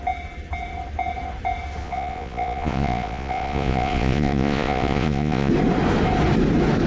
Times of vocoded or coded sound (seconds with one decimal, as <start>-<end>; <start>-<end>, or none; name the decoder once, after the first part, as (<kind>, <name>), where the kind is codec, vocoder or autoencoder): 1.8-5.5 (vocoder, Vocos)